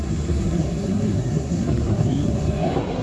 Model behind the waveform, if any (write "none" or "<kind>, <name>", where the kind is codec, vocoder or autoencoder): codec, SNAC